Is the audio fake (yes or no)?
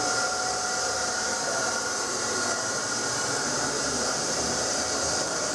yes